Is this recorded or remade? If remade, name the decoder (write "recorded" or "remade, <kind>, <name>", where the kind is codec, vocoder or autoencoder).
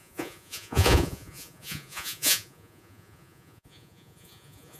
remade, vocoder, Vocos